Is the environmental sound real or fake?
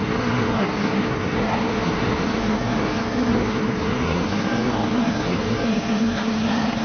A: fake